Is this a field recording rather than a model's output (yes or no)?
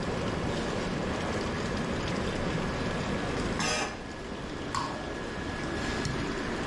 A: yes